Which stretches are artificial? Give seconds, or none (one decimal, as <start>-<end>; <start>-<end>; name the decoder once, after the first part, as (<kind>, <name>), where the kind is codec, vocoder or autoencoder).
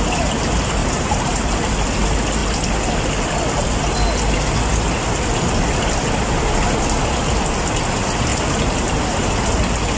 0.8-1.6 (vocoder, BigVGAN v2); 8.3-9.4